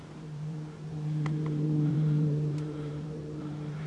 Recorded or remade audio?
remade